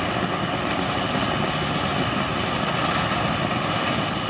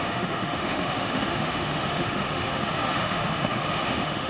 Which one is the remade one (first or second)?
second